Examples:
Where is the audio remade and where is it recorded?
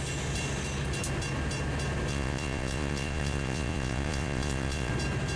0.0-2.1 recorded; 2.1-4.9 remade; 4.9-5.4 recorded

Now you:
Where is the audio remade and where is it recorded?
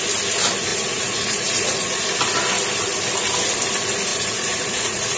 0.0-0.7 recorded; 0.7-2.0 remade; 2.0-4.1 recorded; 4.1-5.2 remade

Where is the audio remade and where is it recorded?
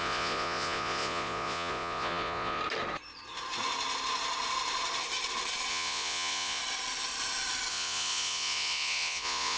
0.0-2.6 remade; 2.6-5.7 recorded; 5.7-6.6 remade; 6.6-7.7 recorded; 7.7-9.6 remade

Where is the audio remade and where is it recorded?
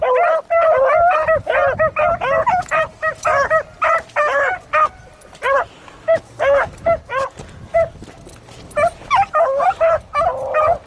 0.0-10.9 recorded